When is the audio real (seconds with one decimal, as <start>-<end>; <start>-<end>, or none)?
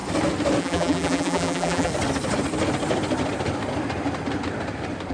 0.0-0.6; 1.9-5.1